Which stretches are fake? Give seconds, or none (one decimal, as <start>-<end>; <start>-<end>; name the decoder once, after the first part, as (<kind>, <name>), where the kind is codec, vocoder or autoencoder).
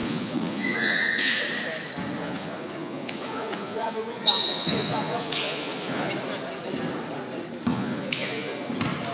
0.0-1.4 (vocoder, Vocos); 2.2-6.1; 7.7-8.7